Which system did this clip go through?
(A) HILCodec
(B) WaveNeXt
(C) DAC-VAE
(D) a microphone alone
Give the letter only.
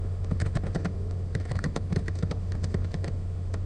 C